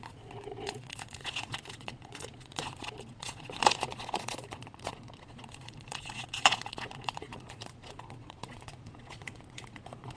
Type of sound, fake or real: fake